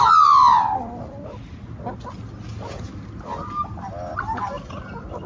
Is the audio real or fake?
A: real